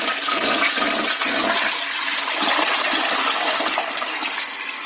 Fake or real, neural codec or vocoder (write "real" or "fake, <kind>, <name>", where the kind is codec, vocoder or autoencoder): real